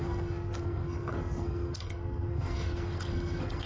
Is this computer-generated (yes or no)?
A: yes